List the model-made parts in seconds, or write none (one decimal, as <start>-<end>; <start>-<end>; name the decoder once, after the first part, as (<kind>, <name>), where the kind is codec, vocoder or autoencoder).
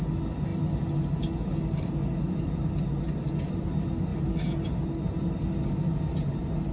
none